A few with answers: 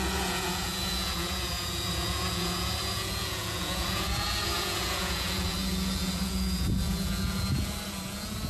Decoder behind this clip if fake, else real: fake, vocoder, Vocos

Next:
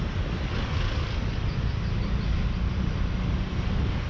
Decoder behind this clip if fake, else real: real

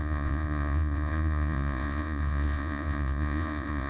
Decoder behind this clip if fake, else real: fake, vocoder, Vocos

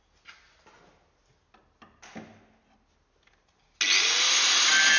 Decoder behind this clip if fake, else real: real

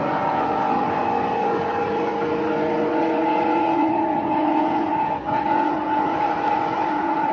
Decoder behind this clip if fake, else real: fake, vocoder, Vocos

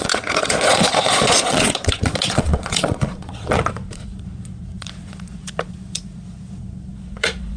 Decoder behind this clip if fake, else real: fake, vocoder, Vocos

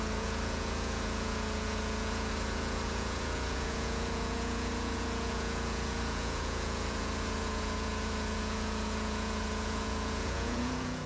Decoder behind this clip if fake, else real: fake, vocoder, Vocos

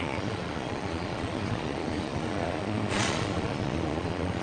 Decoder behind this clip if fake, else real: fake, vocoder, Vocos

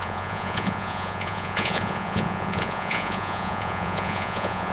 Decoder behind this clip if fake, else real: fake, vocoder, Vocos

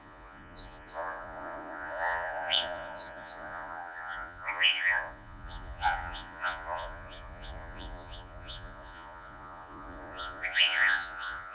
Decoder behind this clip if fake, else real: fake, vocoder, Vocos